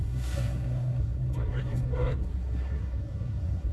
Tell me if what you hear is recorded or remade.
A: remade